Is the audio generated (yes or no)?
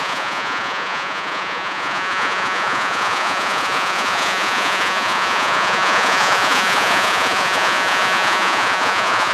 yes